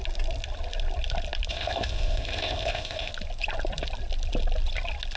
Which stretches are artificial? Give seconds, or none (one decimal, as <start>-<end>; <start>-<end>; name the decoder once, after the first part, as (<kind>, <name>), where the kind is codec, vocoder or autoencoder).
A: 1.5-3.1 (codec, ZipCodec)